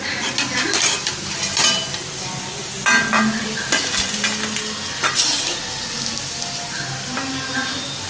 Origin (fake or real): real